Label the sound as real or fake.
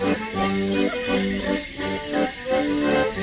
real